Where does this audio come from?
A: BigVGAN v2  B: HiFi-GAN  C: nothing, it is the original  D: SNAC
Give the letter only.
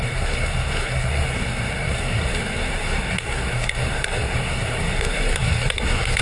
D